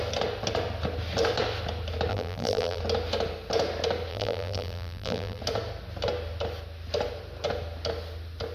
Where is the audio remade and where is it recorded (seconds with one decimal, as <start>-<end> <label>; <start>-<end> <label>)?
0.0-2.1 recorded; 2.1-2.8 remade; 2.8-4.1 recorded; 4.1-5.4 remade; 5.4-8.5 recorded